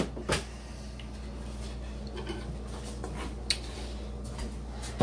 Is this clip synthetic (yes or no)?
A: no